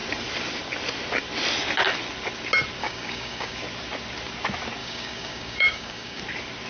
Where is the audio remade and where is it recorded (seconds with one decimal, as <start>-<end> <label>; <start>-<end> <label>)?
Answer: 0.0-2.8 recorded; 2.8-3.6 remade; 3.6-4.8 recorded; 4.8-6.2 remade; 6.2-6.7 recorded